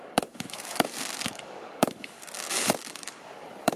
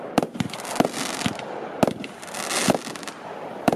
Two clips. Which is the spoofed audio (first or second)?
first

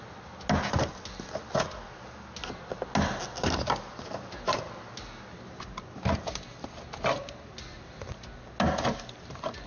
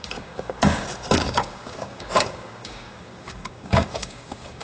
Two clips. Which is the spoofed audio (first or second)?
second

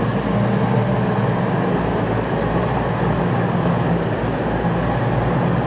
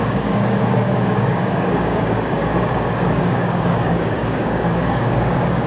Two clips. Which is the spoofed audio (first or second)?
second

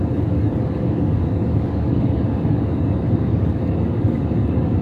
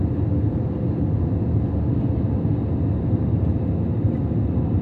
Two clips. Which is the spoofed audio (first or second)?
first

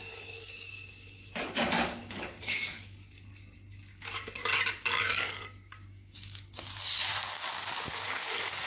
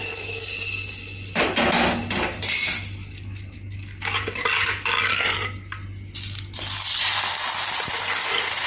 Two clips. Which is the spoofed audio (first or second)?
first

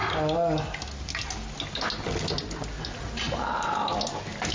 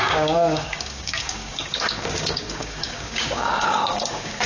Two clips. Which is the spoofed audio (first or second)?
second